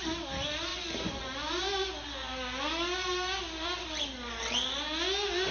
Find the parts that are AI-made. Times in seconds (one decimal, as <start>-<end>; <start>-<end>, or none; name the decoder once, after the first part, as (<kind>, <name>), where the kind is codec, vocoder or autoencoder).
none